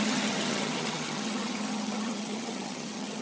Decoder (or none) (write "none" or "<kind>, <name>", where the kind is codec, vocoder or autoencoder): vocoder, HiFi-GAN